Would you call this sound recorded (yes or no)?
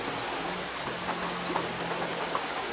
yes